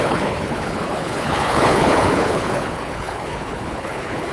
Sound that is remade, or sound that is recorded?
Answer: remade